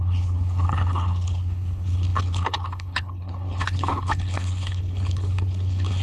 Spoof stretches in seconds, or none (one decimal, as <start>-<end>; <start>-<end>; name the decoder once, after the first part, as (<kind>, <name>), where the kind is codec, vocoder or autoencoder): 0.0-6.0 (codec, HILCodec)